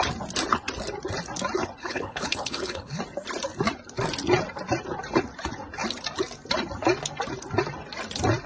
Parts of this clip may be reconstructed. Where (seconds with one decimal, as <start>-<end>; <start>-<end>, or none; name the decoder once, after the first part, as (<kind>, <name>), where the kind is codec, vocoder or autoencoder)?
1.8-3.0 (codec, HILCodec)